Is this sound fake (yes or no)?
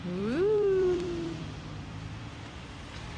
yes